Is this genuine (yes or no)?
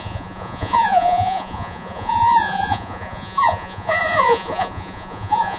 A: no